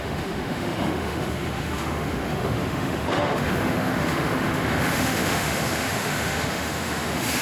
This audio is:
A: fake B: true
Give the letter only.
A